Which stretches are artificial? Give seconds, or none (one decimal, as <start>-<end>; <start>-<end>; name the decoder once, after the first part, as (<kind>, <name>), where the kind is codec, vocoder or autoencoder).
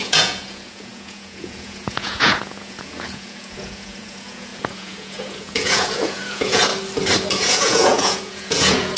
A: 0.0-6.7 (vocoder, Vocos); 7.3-9.0